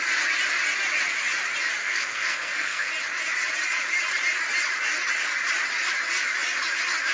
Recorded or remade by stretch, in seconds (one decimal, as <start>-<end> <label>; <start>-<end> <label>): 0.0-1.8 recorded; 1.8-2.9 remade; 2.9-7.1 recorded